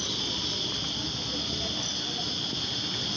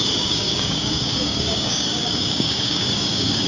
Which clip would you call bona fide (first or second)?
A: first